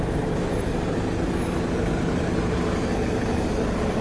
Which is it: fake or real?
real